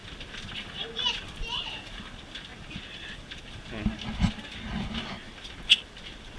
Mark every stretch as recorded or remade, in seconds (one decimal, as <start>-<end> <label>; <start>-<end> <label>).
0.0-6.4 recorded

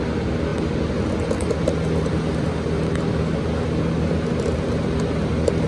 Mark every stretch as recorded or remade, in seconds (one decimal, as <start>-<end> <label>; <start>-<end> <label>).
0.0-5.7 recorded

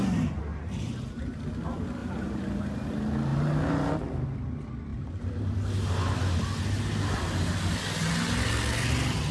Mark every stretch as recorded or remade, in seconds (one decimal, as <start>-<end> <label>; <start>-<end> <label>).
0.0-0.5 recorded; 0.5-1.4 remade; 1.4-2.0 recorded; 2.0-2.6 remade; 2.6-3.3 recorded; 3.3-3.9 remade; 3.9-4.9 recorded; 4.9-5.4 remade; 5.4-9.3 recorded

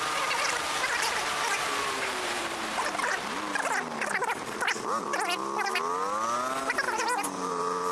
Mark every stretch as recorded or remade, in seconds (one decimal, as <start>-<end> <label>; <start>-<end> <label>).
0.0-3.1 remade; 3.1-6.6 recorded; 6.6-7.9 remade